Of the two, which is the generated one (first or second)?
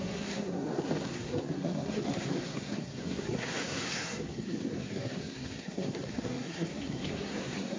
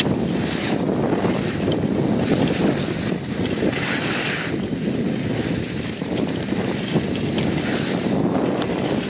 first